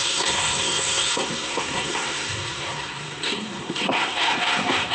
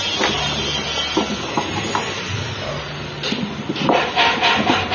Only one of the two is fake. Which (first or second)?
first